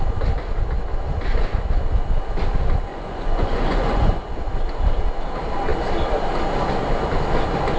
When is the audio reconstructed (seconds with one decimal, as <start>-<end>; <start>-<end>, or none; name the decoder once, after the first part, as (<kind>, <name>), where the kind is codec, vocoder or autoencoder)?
2.9-4.2 (vocoder, Vocos)